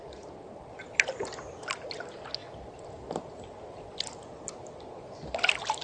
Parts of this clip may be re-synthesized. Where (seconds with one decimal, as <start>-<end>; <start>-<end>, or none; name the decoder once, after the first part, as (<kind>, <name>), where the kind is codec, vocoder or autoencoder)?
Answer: none